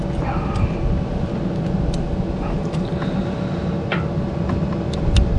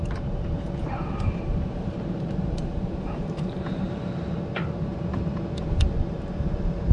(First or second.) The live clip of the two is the first